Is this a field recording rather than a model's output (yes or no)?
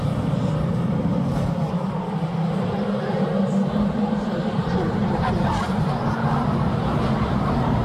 no